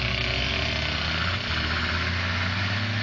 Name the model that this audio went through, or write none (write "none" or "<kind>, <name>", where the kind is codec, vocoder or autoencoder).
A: none